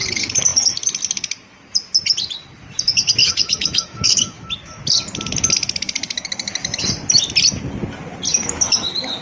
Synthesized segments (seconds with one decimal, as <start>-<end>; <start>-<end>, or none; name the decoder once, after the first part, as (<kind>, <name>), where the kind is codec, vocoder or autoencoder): 3.2-4.5 (autoencoder, DAC-VAE)